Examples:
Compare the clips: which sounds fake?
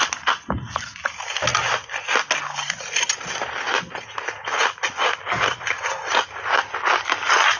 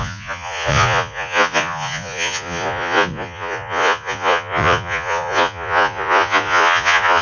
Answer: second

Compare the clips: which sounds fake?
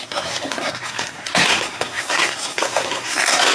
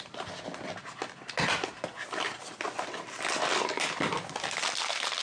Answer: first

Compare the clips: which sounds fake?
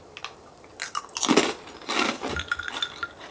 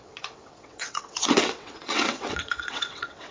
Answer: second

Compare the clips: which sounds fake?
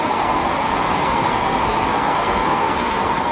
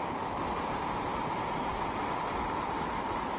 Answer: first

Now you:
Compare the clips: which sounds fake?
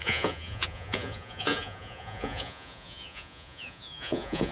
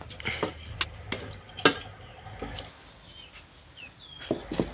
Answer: first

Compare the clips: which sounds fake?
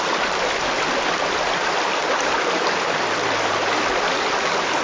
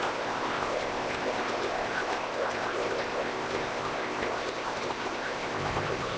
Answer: second